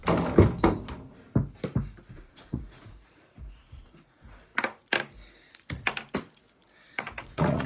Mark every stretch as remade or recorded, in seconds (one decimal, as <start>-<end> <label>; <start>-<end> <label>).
0.0-2.1 recorded; 2.1-4.5 remade; 4.5-6.9 recorded; 6.9-7.7 remade